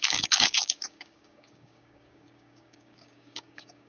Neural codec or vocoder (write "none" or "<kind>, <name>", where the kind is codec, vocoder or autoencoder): codec, DAC